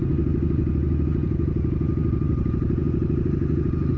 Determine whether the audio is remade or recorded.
recorded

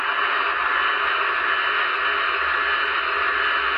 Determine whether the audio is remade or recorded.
recorded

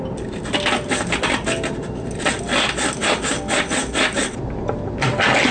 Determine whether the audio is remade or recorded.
recorded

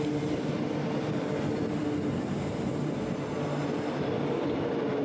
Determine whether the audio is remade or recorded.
recorded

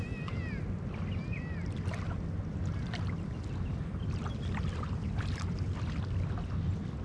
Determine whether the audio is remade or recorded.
recorded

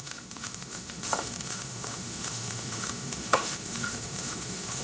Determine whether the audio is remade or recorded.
remade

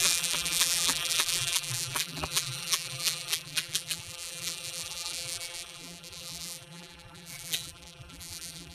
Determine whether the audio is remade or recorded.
remade